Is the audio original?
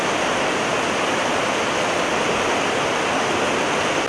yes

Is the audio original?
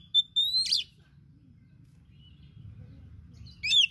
yes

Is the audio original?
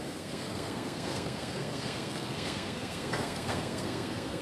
no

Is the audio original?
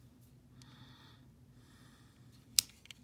yes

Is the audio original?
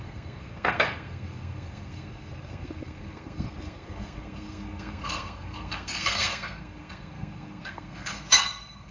no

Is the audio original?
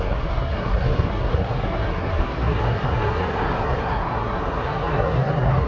no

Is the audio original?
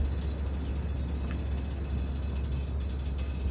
yes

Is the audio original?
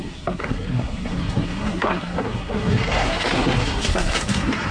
no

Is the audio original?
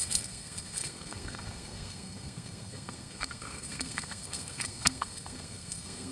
no